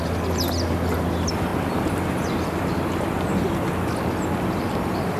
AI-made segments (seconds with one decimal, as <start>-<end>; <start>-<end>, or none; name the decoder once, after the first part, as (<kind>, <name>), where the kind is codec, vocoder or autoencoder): none